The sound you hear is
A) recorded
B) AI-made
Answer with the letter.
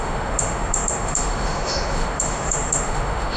B